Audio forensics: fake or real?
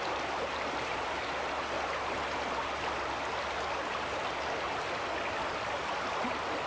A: real